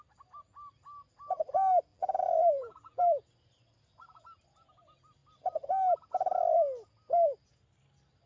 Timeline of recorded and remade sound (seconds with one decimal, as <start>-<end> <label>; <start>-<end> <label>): 0.0-1.9 recorded; 1.9-3.0 remade; 3.0-8.3 recorded